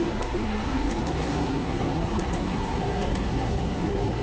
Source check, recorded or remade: remade